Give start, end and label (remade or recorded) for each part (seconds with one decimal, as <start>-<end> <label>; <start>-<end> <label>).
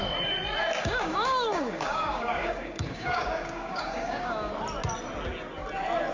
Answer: 0.0-0.8 recorded; 0.8-4.5 remade; 4.5-6.1 recorded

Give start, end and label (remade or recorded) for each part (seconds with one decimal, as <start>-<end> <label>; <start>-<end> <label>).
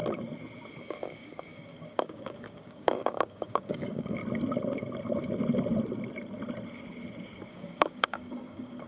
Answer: 0.0-0.7 recorded; 0.7-4.2 remade; 4.2-7.5 recorded; 7.5-8.9 remade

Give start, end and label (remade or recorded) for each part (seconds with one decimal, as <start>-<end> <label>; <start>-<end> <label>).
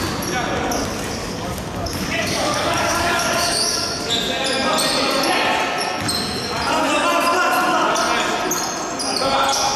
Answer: 0.0-1.2 recorded; 1.2-4.1 remade; 4.1-9.8 recorded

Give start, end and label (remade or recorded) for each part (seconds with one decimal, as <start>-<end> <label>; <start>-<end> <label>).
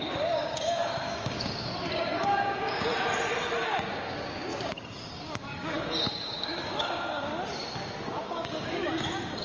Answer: 0.0-1.7 remade; 1.7-2.2 recorded; 2.2-2.9 remade; 2.9-3.6 recorded; 3.6-7.3 remade; 7.3-8.1 recorded; 8.1-9.4 remade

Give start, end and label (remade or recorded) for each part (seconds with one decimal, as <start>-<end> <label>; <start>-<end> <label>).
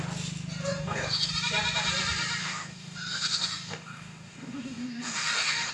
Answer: 0.0-0.6 recorded; 0.6-1.3 remade; 1.3-2.4 recorded; 2.4-5.7 remade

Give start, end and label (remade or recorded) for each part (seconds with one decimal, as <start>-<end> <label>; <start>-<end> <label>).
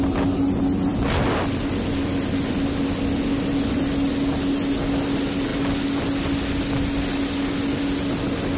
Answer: 0.0-8.6 recorded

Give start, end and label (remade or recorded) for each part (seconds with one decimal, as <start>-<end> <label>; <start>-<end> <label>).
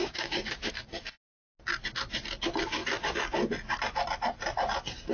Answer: 0.0-0.7 remade; 0.7-5.1 recorded